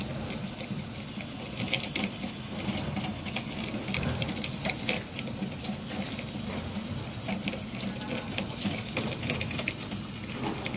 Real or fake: real